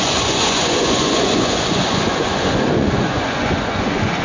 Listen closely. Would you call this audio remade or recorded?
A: remade